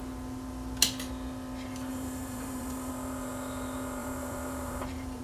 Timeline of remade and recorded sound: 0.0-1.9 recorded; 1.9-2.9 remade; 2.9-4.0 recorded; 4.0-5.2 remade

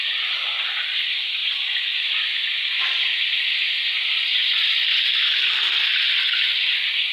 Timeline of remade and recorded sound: 0.0-7.1 recorded

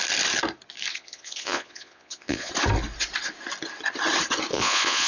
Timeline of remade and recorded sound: 0.0-0.9 recorded; 0.9-2.5 remade; 2.5-4.5 recorded; 4.5-5.1 remade

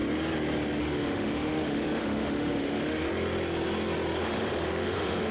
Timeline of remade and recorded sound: 0.0-0.8 recorded; 0.8-3.1 remade; 3.1-4.2 recorded; 4.2-5.3 remade